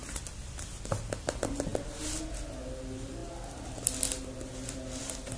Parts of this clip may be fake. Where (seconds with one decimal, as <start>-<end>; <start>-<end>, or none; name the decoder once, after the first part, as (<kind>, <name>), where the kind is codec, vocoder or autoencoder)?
none